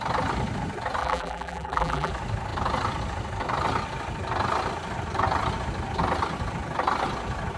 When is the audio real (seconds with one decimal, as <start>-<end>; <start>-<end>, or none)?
0.0-1.0; 2.1-7.6